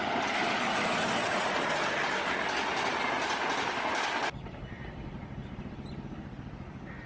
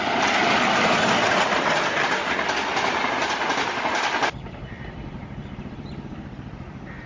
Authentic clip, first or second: first